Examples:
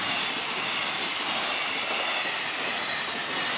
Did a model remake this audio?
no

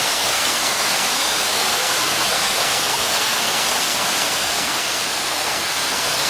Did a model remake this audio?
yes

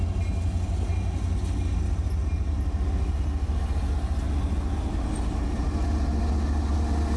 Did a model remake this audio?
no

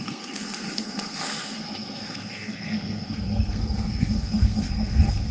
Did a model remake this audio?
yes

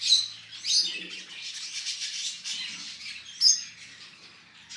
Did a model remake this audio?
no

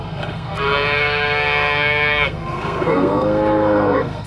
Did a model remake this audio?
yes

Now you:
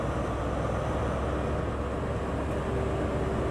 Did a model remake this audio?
no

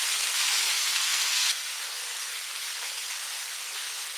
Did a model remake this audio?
yes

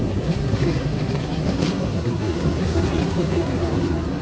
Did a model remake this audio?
yes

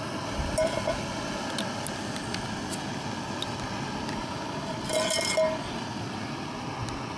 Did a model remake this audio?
no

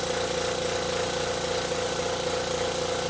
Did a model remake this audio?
no